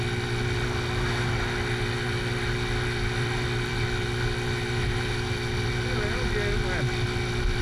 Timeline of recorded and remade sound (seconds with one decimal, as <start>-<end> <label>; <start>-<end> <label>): 0.0-7.6 recorded